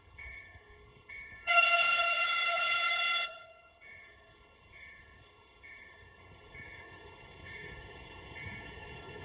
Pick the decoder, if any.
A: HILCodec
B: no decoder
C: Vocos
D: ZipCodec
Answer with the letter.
A